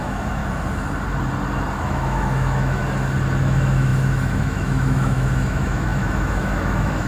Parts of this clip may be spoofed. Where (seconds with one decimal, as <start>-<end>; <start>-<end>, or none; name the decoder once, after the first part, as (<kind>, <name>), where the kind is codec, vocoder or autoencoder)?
0.0-0.4 (autoencoder, DAC-VAE); 1.8-2.8; 3.4-7.1